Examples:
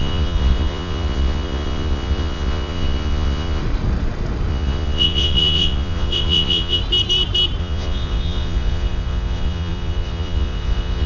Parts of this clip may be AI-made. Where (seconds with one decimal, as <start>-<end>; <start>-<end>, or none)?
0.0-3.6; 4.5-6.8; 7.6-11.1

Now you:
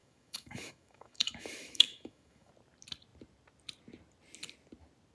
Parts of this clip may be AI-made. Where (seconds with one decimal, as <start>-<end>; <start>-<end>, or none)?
0.0-2.5

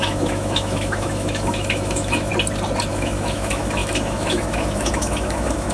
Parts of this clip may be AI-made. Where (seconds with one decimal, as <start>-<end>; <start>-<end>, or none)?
0.0-2.3; 2.9-5.7